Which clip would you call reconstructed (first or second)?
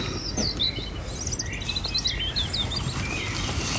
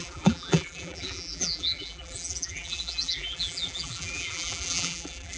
second